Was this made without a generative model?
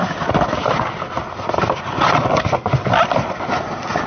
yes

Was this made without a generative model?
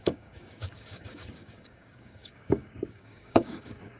no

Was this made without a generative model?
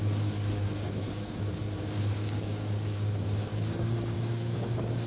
no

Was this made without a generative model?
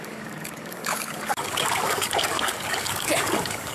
no